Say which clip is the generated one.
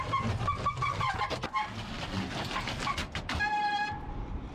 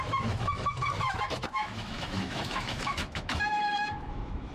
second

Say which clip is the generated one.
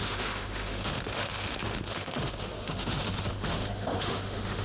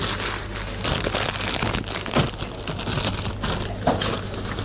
first